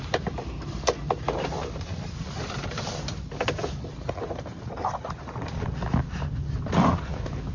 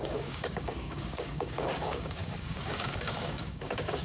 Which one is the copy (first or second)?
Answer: second